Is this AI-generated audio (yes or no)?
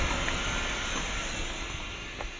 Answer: no